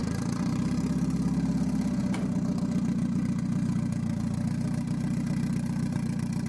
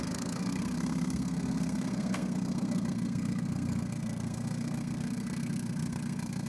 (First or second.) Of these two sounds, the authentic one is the first